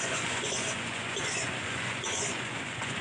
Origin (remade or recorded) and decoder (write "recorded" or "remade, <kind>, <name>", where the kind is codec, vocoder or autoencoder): remade, vocoder, Vocos